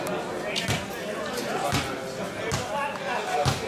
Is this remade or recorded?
recorded